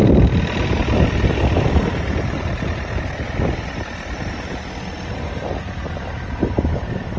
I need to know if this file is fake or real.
real